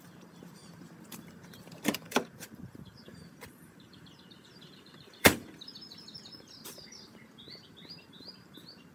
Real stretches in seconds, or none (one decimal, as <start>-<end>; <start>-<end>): 5.7-6.4